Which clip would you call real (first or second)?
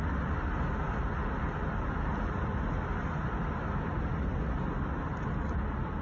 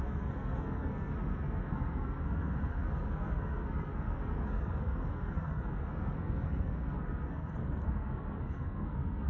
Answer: first